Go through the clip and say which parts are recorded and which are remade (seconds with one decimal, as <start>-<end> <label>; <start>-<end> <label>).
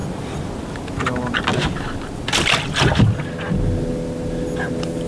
0.0-5.1 recorded